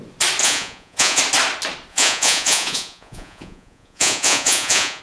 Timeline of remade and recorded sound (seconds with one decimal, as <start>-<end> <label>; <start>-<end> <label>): 0.0-0.4 recorded; 0.4-1.2 remade; 1.2-1.9 recorded; 1.9-5.0 remade